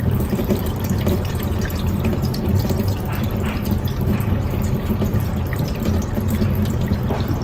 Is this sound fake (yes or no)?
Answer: yes